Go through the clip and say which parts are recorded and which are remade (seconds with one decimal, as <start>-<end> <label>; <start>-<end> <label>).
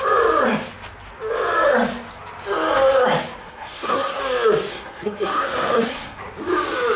0.0-3.4 recorded; 3.4-4.2 remade; 4.2-4.7 recorded; 4.7-6.2 remade; 6.2-7.0 recorded